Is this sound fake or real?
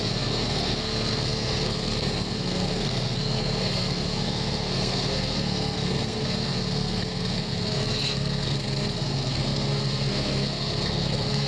fake